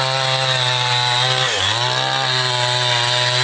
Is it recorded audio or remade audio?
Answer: recorded